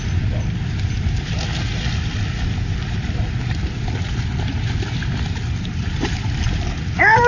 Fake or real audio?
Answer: real